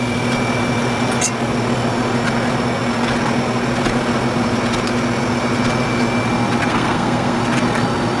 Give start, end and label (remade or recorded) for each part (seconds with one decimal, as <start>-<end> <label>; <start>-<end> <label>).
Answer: 0.0-6.7 recorded; 6.7-7.4 remade; 7.4-8.2 recorded